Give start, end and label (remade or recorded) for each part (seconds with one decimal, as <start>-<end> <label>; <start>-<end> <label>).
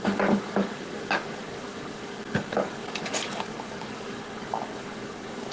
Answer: 0.0-5.5 remade